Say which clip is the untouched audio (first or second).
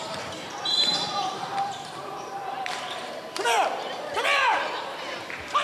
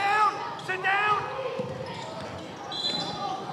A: second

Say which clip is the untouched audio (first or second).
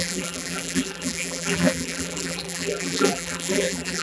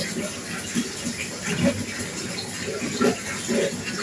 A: second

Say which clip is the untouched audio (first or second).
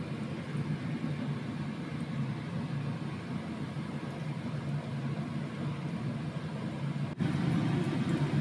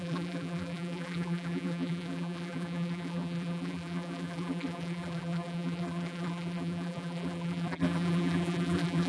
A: first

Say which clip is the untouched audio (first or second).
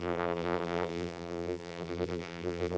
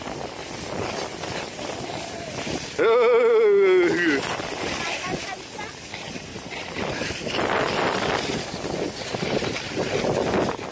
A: second